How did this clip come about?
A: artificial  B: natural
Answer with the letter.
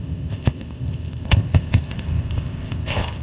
A